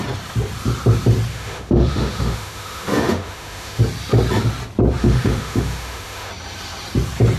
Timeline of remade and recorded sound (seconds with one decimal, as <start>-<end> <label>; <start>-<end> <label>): 0.0-1.3 recorded; 1.3-3.8 remade; 3.8-5.0 recorded; 5.0-6.3 remade; 6.3-7.4 recorded